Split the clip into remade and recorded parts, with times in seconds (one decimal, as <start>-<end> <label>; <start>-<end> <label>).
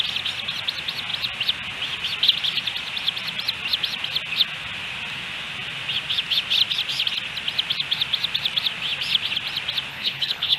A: 0.0-9.9 recorded; 9.9-10.6 remade